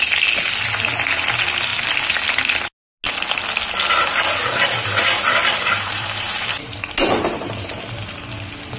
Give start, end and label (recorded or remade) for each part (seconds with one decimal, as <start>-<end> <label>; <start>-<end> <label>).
0.0-5.4 recorded; 5.4-8.2 remade; 8.2-8.8 recorded

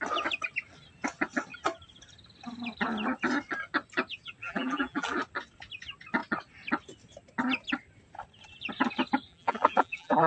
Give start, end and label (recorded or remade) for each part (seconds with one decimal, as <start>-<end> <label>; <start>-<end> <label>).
0.0-4.4 recorded; 4.4-5.2 remade; 5.2-9.3 recorded; 9.3-10.3 remade

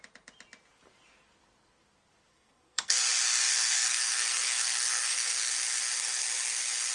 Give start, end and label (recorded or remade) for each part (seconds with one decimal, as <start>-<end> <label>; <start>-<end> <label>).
0.0-2.3 recorded; 2.3-3.0 remade; 3.0-3.5 recorded; 3.5-5.4 remade; 5.4-6.9 recorded

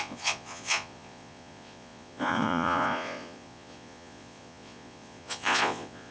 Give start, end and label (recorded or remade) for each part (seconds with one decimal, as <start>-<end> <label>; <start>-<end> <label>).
0.0-6.1 remade

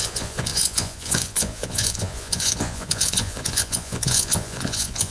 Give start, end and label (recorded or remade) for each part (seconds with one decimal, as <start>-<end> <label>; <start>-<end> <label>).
0.0-5.1 remade